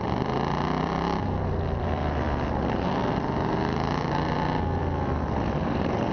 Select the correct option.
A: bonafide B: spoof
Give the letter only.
A